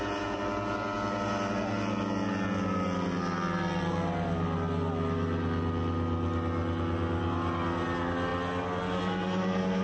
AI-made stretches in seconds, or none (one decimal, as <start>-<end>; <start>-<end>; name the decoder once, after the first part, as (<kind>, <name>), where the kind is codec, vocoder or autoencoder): none